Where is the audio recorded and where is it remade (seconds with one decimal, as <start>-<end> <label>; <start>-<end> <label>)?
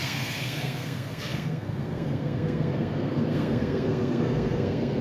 0.0-5.0 remade